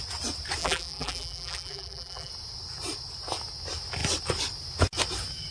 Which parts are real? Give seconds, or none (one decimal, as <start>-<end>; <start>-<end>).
0.0-0.6; 2.3-5.5